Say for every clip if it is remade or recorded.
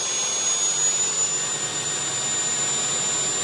recorded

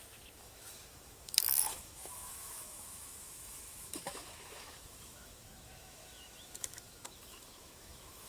remade